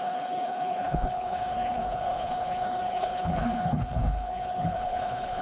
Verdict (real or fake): fake